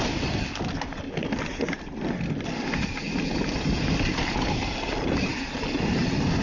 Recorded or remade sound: recorded